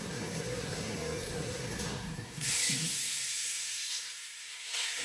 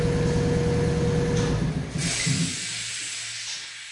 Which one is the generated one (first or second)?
first